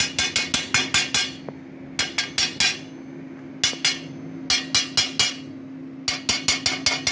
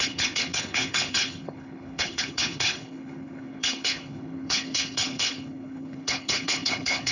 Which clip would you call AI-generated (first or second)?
second